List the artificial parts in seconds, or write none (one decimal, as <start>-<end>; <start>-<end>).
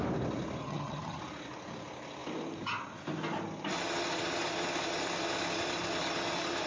0.6-1.2